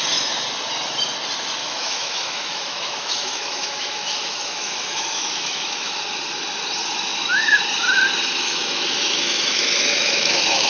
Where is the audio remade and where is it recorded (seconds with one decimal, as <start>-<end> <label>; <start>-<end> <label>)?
0.0-1.6 recorded; 1.6-6.0 remade; 6.0-7.1 recorded; 7.1-7.6 remade; 7.6-8.2 recorded; 8.2-10.7 remade